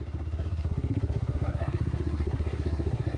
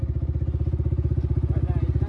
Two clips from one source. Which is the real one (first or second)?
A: second